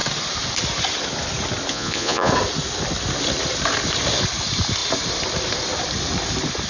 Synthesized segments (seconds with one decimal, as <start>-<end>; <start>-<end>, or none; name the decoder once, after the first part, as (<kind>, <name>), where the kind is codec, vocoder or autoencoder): 1.7-2.3 (vocoder, Vocos)